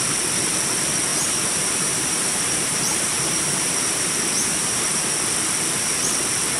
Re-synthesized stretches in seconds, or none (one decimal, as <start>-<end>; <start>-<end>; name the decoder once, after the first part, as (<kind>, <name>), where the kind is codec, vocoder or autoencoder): 1.1-5.1 (vocoder, BigVGAN v2)